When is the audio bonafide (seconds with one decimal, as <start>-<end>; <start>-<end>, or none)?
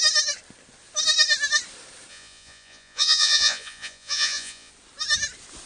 0.0-2.1; 4.7-5.7